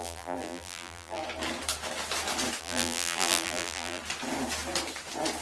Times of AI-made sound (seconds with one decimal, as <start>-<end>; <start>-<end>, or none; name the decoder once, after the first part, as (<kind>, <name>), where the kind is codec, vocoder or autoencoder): 0.0-1.2 (vocoder, BigVGAN v2); 2.6-4.0